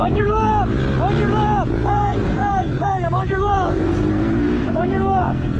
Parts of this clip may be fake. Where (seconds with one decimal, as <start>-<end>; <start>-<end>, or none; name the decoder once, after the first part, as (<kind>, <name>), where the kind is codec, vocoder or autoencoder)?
0.0-0.5 (codec, SNAC); 1.7-5.6